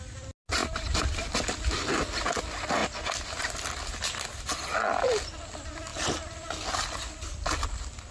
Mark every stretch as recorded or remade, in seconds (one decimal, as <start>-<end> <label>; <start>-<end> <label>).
0.0-2.8 recorded; 2.8-4.0 remade; 4.0-5.9 recorded; 5.9-6.4 remade; 6.4-8.1 recorded